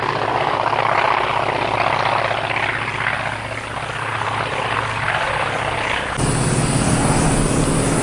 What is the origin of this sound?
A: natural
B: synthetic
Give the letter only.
A